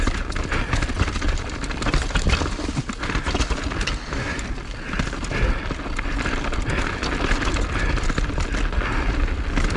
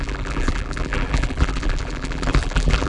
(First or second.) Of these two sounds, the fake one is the second